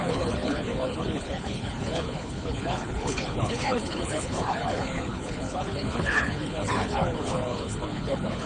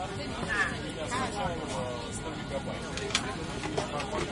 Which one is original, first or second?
second